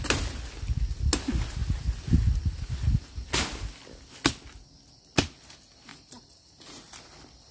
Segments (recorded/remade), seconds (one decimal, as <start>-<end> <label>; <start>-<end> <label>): 0.0-5.9 recorded; 5.9-6.8 remade; 6.8-7.5 recorded